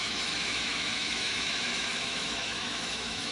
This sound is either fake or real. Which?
fake